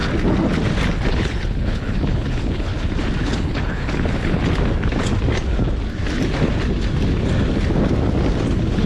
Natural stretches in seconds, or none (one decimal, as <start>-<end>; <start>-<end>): 0.0-1.1; 2.7-3.2; 4.4-8.5